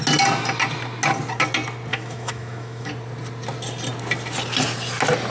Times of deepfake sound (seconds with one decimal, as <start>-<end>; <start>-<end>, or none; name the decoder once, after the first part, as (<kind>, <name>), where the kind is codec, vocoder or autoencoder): 1.9-2.9 (autoencoder, DAC-VAE)